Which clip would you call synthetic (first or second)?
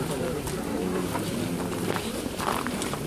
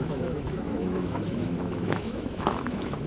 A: second